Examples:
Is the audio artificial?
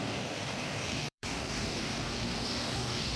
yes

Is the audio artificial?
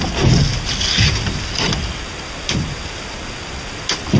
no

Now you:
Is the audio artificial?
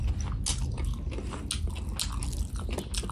no